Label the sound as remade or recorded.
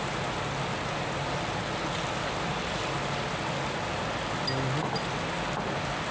recorded